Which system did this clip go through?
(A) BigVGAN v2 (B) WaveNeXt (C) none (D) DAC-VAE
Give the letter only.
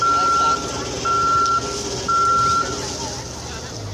C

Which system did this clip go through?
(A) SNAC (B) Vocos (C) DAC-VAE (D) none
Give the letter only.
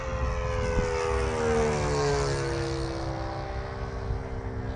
D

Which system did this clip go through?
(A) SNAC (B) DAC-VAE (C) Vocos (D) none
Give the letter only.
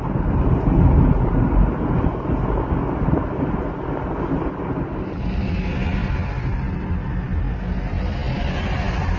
D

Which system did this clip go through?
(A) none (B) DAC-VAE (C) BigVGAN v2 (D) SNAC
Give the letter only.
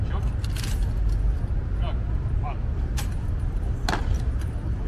A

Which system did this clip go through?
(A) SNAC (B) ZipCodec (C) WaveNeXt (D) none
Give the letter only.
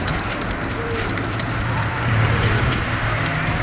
D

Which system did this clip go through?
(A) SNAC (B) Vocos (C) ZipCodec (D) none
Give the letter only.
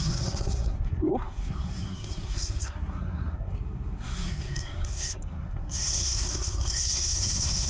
A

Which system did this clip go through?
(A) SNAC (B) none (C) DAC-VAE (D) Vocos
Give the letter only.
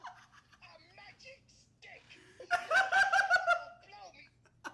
B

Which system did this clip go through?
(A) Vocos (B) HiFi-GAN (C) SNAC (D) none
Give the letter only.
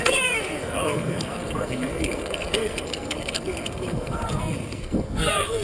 C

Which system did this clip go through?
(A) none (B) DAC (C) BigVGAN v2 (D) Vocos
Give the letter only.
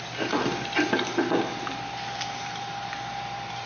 A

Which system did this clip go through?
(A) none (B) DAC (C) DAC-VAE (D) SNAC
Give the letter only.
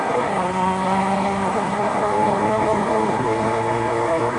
D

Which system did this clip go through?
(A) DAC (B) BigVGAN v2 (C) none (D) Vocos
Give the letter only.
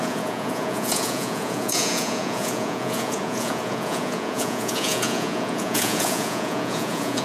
D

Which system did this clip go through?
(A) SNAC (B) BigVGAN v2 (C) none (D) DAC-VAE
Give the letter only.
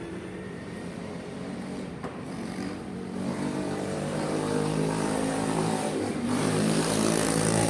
B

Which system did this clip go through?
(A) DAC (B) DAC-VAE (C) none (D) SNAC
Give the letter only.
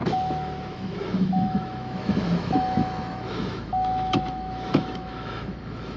B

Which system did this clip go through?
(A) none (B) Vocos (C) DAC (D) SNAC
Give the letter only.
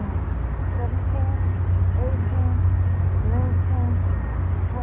A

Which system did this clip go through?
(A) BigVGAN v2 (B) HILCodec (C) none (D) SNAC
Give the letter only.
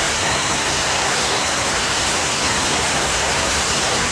D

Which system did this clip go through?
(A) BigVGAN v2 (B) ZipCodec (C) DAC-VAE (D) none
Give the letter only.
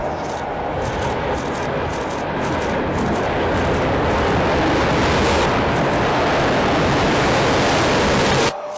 D